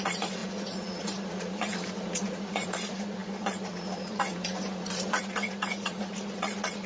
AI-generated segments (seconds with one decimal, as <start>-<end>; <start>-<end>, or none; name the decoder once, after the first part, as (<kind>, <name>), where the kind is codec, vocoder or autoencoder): 0.0-6.9 (vocoder, Vocos)

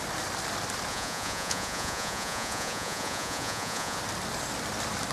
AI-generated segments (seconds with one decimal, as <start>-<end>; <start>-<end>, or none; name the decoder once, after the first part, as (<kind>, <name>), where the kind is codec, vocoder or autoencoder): 0.9-4.0 (vocoder, Vocos)

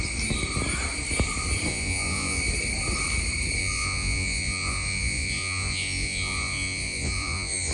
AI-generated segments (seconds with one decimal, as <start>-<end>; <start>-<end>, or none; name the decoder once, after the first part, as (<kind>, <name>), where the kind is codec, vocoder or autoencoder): 1.7-2.4 (vocoder, Vocos); 3.6-7.7

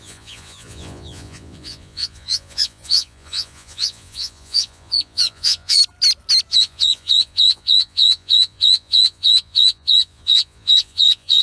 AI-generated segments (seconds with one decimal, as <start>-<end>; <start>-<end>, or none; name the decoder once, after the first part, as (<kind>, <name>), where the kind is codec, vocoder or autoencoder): 0.0-5.8 (vocoder, Vocos); 6.5-11.4

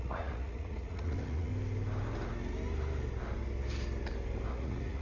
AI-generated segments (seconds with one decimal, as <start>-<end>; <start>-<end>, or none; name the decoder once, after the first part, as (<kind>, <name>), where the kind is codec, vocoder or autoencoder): 0.0-1.5 (vocoder, Vocos); 4.5-5.0